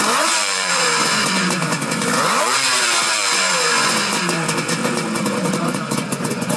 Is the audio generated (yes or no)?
yes